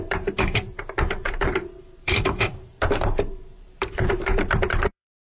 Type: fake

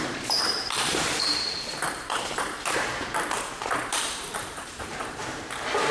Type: fake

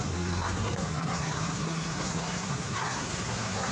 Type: fake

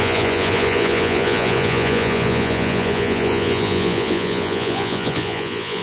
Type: fake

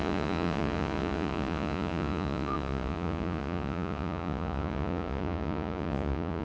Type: fake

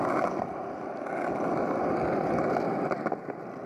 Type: real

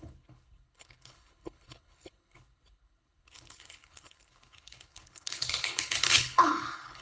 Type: fake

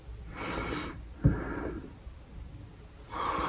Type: real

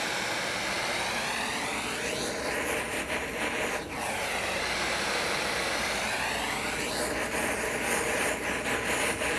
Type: fake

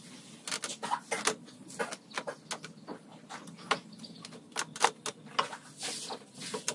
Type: real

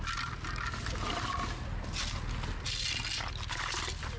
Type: real